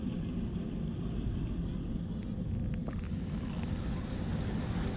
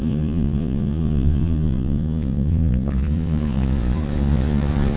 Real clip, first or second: first